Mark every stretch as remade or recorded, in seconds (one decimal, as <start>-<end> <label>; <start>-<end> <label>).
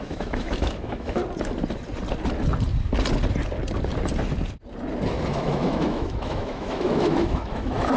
0.0-1.2 remade; 1.2-5.3 recorded; 5.3-8.0 remade